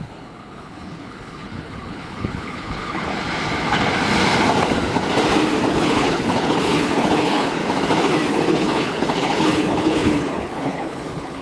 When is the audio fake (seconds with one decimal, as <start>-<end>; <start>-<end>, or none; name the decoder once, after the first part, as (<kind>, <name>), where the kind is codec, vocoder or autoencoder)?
0.0-3.1 (codec, HILCodec); 5.7-7.6; 8.3-11.4